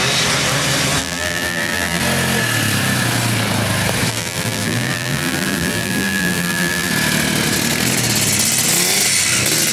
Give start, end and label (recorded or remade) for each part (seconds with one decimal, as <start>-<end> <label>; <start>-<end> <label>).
0.0-1.0 recorded; 1.0-2.0 remade; 2.0-4.1 recorded; 4.1-6.9 remade; 6.9-9.7 recorded